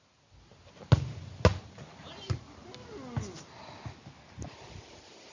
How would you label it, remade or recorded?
recorded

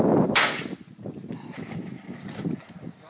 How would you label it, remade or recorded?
recorded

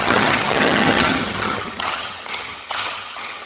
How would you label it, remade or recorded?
remade